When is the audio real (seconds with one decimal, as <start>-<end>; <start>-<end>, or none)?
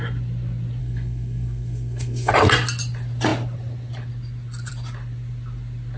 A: 0.0-0.8; 2.3-6.0